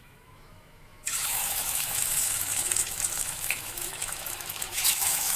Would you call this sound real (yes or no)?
no